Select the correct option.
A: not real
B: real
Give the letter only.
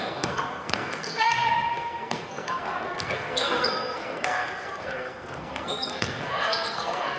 A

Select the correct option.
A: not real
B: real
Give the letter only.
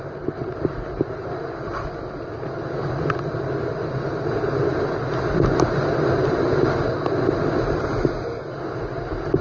B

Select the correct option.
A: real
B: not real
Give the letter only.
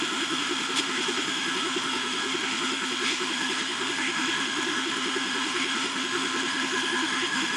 B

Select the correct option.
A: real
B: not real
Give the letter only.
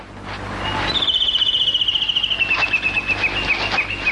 A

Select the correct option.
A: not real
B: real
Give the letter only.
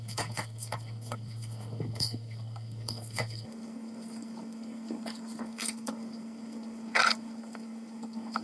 A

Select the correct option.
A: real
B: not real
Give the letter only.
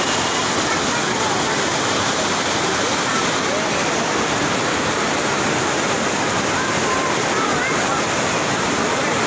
A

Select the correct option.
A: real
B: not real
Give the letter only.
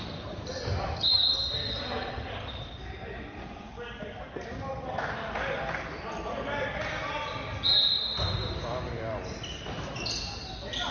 A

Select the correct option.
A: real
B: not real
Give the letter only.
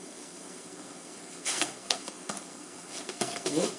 B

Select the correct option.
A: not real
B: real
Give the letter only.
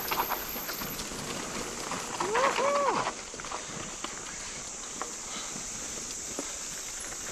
B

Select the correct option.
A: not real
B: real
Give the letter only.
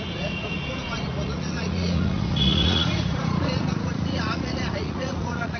A